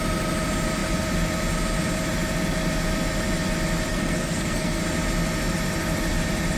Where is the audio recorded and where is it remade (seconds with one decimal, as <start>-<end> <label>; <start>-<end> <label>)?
0.0-3.9 recorded; 3.9-4.8 remade; 4.8-6.6 recorded

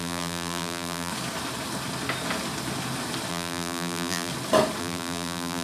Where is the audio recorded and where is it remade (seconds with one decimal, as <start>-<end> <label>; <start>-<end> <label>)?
0.0-1.1 remade; 1.1-3.3 recorded; 3.3-4.3 remade; 4.3-4.8 recorded; 4.8-5.6 remade

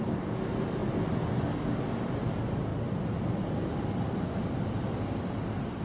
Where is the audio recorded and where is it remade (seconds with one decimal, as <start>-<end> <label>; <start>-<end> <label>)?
0.0-5.8 recorded

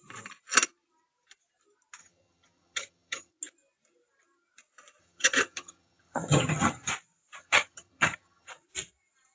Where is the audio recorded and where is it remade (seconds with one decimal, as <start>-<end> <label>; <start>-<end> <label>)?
0.0-2.0 recorded; 2.0-3.3 remade; 3.3-5.0 recorded; 5.0-6.9 remade; 6.9-7.4 recorded; 7.4-8.5 remade; 8.5-9.3 recorded

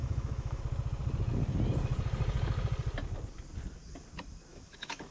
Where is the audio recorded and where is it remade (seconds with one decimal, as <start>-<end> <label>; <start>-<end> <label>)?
0.0-0.6 remade; 0.6-4.5 recorded; 4.5-5.1 remade

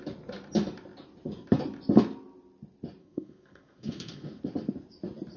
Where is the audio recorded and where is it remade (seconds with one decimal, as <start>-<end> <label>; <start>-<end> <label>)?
0.0-3.0 recorded; 3.0-4.4 remade; 4.4-5.4 recorded